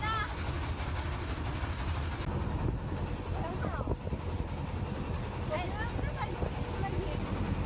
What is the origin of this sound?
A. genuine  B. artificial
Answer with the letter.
A